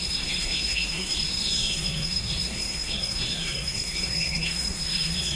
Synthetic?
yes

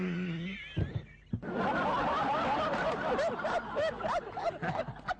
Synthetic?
no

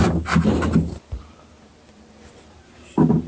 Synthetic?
no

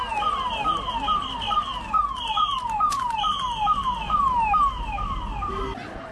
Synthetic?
no